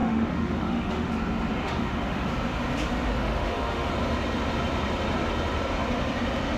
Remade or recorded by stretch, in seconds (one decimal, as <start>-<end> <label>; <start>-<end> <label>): 0.0-1.1 remade; 1.1-1.6 recorded; 1.6-2.3 remade; 2.3-3.2 recorded; 3.2-3.9 remade; 3.9-6.6 recorded